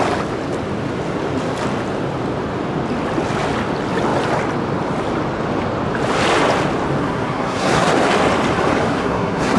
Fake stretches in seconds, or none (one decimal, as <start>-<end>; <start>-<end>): 7.0-7.9; 8.9-9.6